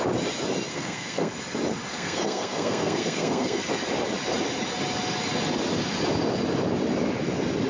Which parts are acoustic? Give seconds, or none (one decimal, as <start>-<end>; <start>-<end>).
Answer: 0.0-0.7; 1.3-1.9; 3.6-7.7